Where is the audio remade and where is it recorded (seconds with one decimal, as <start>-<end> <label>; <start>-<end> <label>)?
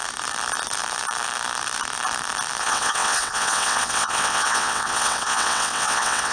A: 0.0-2.6 recorded; 2.6-6.3 remade